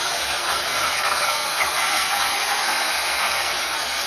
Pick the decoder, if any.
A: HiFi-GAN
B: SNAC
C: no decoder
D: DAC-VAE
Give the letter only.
B